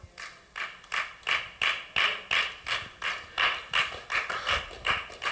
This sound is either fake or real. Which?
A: real